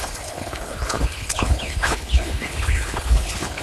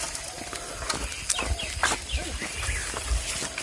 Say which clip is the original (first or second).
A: second